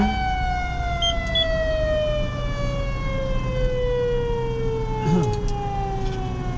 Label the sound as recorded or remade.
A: recorded